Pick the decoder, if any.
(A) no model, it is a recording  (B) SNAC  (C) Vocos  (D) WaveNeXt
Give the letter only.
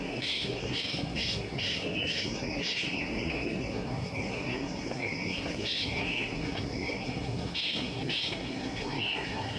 B